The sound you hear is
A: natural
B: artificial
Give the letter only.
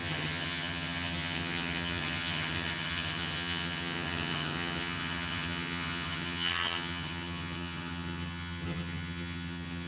B